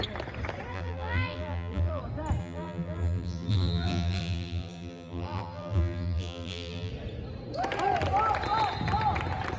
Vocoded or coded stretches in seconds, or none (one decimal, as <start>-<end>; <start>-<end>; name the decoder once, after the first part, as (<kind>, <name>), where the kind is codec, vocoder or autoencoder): 0.7-2.0 (vocoder, BigVGAN v2); 2.4-6.9